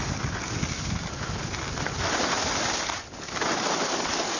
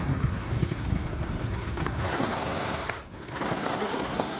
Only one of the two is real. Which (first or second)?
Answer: first